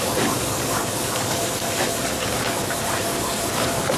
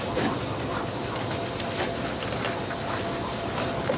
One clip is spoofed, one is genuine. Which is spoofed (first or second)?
first